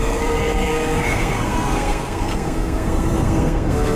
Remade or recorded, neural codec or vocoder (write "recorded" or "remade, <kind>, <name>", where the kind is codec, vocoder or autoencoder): remade, codec, SNAC